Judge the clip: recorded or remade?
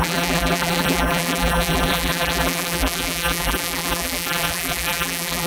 remade